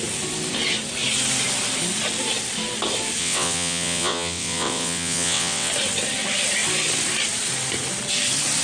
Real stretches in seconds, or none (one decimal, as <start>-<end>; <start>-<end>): 0.0-3.2; 5.7-8.6